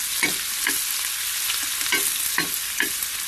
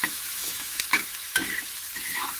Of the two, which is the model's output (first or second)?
second